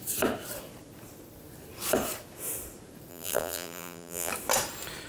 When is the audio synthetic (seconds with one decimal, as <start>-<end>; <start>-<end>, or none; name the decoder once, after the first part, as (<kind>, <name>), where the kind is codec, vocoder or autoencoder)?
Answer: 3.1-4.3 (vocoder, BigVGAN v2)